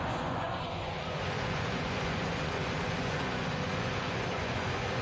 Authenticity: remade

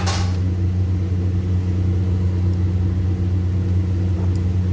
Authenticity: recorded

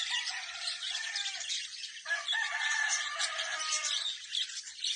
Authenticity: recorded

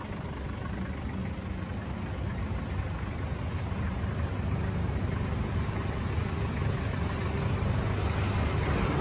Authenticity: recorded